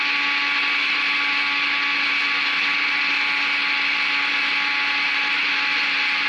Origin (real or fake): real